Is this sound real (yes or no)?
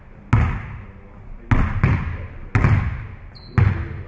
yes